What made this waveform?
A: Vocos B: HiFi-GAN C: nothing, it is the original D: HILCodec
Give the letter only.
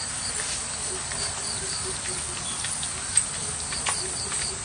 C